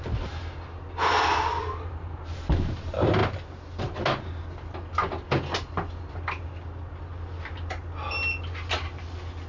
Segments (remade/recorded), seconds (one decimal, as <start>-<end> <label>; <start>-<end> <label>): 0.0-9.5 recorded